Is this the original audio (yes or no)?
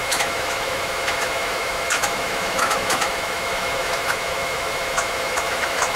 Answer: no